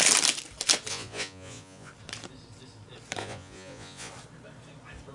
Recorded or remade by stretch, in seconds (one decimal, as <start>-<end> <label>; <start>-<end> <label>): 0.0-0.9 recorded; 0.9-1.9 remade; 1.9-3.2 recorded; 3.2-4.1 remade; 4.1-5.1 recorded